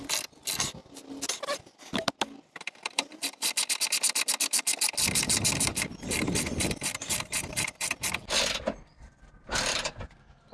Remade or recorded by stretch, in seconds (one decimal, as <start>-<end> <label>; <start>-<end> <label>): 0.0-2.8 recorded; 2.8-3.5 remade; 3.5-5.7 recorded; 5.7-10.1 remade; 10.1-10.5 recorded